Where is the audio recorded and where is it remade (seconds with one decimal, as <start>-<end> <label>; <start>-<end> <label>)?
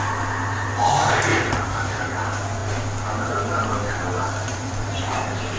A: 0.0-1.3 recorded; 1.3-2.1 remade; 2.1-4.5 recorded; 4.5-5.0 remade; 5.0-5.6 recorded